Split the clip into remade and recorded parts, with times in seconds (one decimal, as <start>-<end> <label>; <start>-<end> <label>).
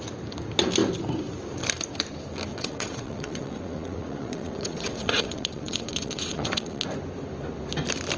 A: 0.0-2.5 recorded; 2.5-6.8 remade; 6.8-8.2 recorded